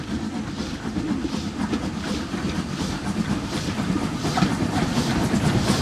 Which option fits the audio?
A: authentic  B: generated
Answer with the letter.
A